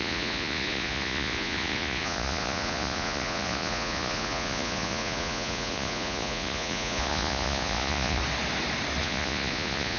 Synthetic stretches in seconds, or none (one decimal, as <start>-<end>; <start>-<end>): 0.0-8.2; 9.0-10.0

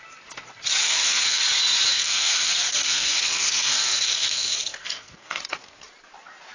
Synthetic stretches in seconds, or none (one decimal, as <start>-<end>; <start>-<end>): 0.8-1.4; 1.9-5.4